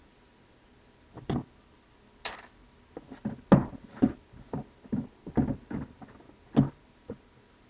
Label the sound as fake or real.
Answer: real